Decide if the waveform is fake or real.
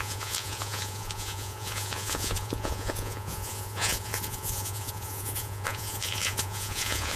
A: fake